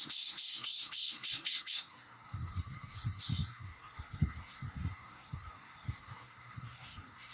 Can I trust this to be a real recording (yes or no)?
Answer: no